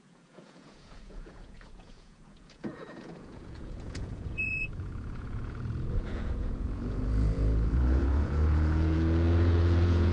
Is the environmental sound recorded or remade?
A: remade